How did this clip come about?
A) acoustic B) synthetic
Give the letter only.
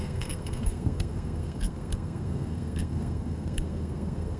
B